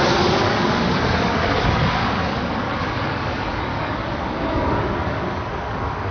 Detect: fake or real fake